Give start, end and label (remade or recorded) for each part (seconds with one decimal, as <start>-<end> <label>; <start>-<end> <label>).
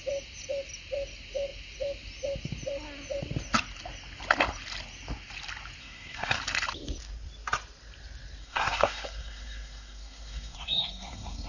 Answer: 0.0-5.8 recorded; 5.8-6.4 remade; 6.4-8.4 recorded; 8.4-11.5 remade